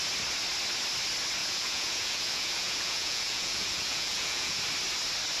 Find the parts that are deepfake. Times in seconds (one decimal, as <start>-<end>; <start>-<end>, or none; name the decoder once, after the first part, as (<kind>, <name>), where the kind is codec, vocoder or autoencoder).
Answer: 1.4-4.6 (vocoder, Vocos)